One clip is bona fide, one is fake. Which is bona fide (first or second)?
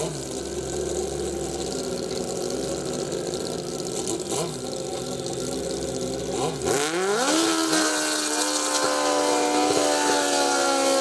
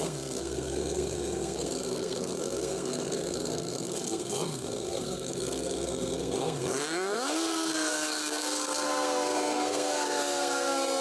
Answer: first